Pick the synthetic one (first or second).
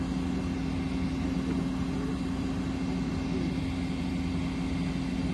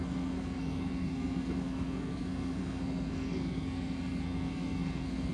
second